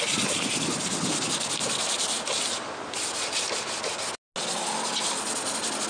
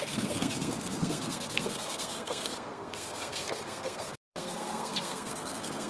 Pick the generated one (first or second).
second